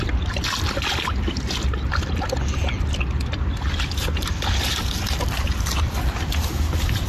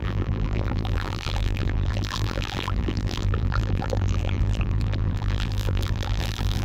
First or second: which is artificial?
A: second